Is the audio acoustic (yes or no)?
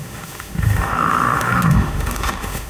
no